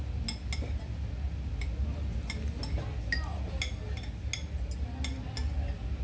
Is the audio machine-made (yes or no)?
no